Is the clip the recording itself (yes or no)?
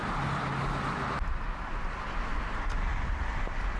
yes